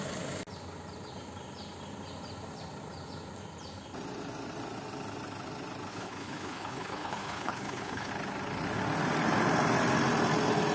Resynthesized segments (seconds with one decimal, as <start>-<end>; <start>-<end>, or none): 5.9-8.1